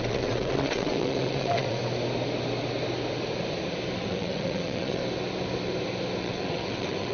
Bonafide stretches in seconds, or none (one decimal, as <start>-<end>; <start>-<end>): 1.8-4.0; 5.0-6.2